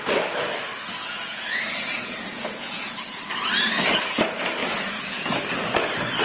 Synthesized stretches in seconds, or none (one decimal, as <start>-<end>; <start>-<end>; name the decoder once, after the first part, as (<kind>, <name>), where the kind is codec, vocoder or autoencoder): 1.0-1.6 (vocoder, Vocos); 2.3-3.3; 4.6-5.4